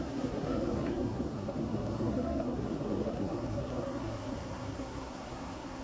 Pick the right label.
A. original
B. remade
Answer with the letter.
B